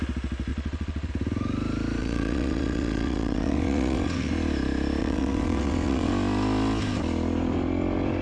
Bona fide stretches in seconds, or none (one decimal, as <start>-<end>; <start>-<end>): 0.0-0.5; 1.1-2.0; 4.3-5.0; 6.1-8.2

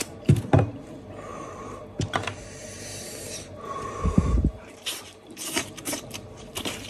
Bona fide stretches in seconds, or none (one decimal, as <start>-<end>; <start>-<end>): none

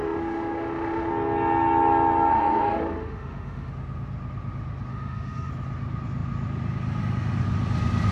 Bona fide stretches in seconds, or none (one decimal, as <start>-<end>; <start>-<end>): 1.1-2.3; 3.7-4.9; 5.5-8.1

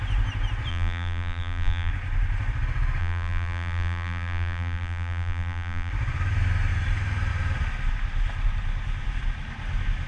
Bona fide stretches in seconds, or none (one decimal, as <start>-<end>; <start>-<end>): 0.0-0.7; 1.9-3.0; 5.9-10.1

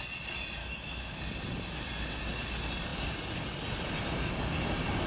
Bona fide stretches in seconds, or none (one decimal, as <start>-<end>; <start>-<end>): 0.0-0.6; 1.2-5.1

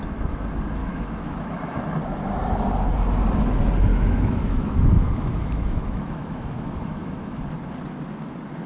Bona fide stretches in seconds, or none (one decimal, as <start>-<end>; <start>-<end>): 0.0-0.8; 1.8-3.9; 7.4-8.7

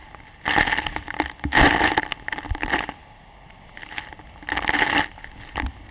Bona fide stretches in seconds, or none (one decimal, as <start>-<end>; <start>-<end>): 0.0-5.9